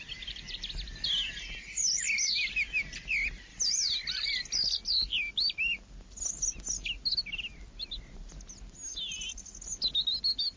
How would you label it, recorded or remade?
recorded